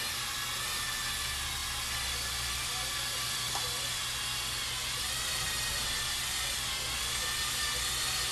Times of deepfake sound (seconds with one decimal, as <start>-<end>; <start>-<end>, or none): none